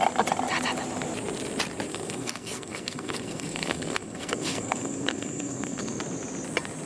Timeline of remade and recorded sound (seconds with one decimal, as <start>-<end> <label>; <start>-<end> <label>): 0.0-1.9 recorded; 1.9-6.0 remade; 6.0-6.9 recorded